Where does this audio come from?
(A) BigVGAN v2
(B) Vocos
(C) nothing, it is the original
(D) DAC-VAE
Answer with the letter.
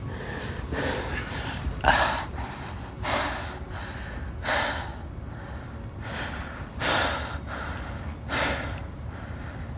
A